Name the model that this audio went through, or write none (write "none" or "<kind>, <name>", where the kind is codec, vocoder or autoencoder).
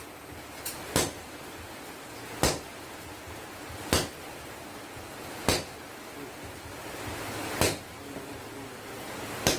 none